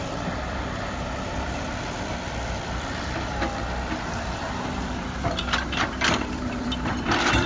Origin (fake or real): fake